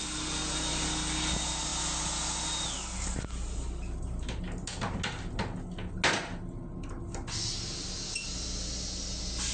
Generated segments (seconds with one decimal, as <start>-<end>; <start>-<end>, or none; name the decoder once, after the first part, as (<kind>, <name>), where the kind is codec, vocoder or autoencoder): none